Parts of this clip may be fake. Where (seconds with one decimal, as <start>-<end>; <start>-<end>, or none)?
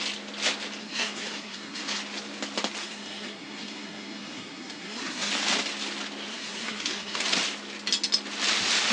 0.8-2.0; 2.8-5.3; 6.3-7.2